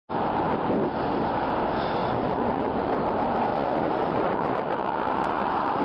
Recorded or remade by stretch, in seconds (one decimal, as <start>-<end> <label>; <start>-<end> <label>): 0.0-2.0 recorded; 2.0-2.9 remade; 2.9-3.5 recorded; 3.5-5.8 remade